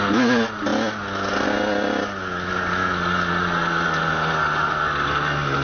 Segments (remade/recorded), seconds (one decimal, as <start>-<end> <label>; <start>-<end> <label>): 0.0-5.6 recorded